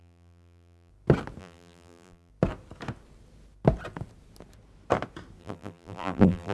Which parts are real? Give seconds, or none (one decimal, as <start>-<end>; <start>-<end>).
0.9-1.4; 2.3-5.4